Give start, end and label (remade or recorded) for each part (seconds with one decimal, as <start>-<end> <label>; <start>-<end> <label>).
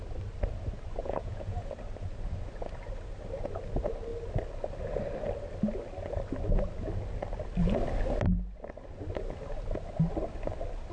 0.0-1.0 recorded; 1.0-1.7 remade; 1.7-10.9 recorded